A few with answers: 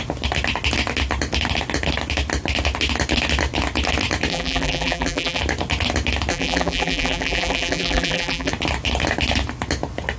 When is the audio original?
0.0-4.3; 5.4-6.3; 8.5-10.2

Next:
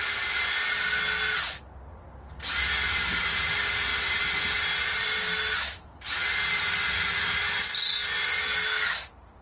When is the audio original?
0.0-3.9; 5.5-9.4

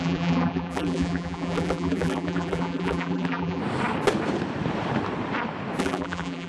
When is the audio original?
3.6-5.8

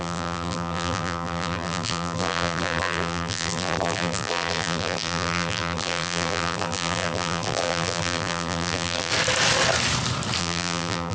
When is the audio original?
9.1-10.4

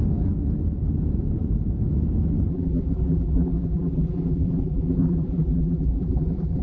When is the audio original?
0.0-2.5

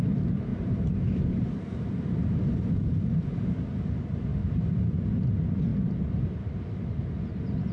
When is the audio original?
0.0-0.5; 3.5-4.3; 5.0-7.7